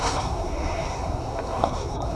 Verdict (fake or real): fake